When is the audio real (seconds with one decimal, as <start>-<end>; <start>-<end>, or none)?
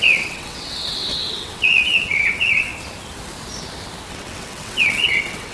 2.7-4.1